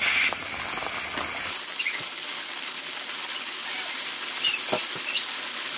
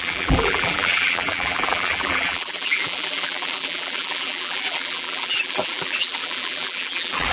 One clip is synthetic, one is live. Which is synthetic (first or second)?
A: second